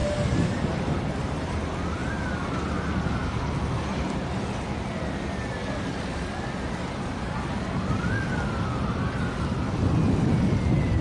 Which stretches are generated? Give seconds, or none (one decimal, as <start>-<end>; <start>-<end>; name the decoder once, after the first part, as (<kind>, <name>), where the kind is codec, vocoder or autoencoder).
none